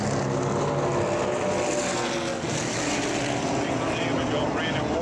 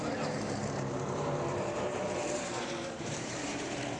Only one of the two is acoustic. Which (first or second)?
first